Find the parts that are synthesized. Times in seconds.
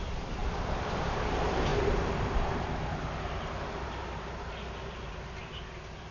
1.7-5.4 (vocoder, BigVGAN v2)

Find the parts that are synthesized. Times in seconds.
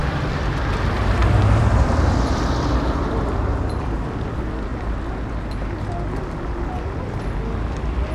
0.0-0.7 (vocoder, BigVGAN v2); 1.2-4.3